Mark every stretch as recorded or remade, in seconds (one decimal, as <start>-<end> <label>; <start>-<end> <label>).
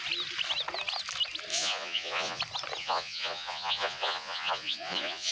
0.0-1.5 recorded; 1.5-2.4 remade; 2.4-2.8 recorded; 2.8-5.3 remade